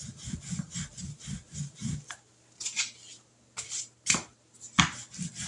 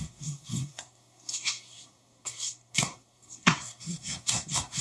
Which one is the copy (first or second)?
second